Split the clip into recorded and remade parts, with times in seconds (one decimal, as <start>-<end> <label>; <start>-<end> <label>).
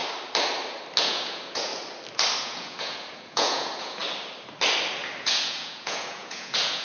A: 0.0-1.0 recorded; 1.0-1.7 remade; 1.7-2.4 recorded; 2.4-4.0 remade; 4.0-5.2 recorded; 5.2-6.8 remade